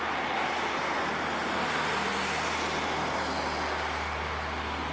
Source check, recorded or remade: recorded